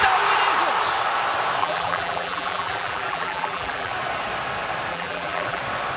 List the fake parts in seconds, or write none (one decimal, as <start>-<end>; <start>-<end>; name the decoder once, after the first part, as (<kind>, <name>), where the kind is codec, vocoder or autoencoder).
1.6-3.9 (vocoder, BigVGAN v2); 4.9-5.6